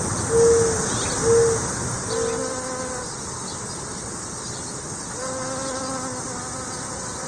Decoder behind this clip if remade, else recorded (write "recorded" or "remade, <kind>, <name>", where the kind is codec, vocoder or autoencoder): recorded